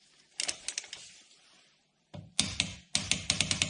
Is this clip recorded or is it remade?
recorded